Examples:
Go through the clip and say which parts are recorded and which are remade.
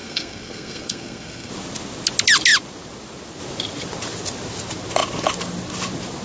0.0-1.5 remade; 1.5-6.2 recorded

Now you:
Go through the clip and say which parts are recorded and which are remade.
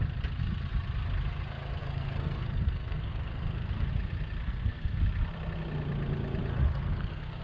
0.0-1.8 recorded; 1.8-3.9 remade; 3.9-4.4 recorded; 4.4-5.0 remade; 5.0-6.7 recorded; 6.7-7.4 remade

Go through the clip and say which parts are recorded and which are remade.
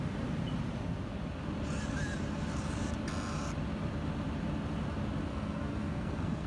0.0-5.3 recorded; 5.3-6.5 remade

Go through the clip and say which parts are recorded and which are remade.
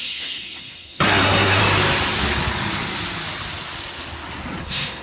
0.0-1.6 remade; 1.6-4.6 recorded; 4.6-5.0 remade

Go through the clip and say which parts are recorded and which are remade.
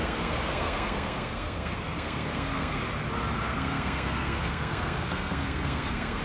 0.0-2.8 remade; 2.8-3.4 recorded; 3.4-6.2 remade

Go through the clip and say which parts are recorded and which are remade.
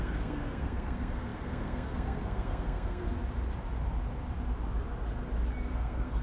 0.0-3.0 remade; 3.0-5.7 recorded; 5.7-6.2 remade